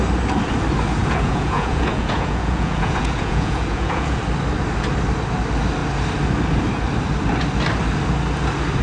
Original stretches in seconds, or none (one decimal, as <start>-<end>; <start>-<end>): 0.0-1.0; 4.2-8.8